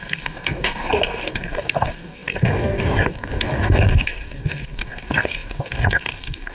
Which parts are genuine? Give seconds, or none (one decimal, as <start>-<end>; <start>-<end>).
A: none